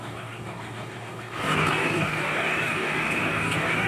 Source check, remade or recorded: remade